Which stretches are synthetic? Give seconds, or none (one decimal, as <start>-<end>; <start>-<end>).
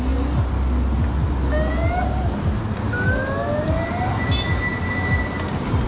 none